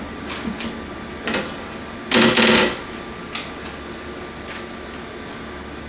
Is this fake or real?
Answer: real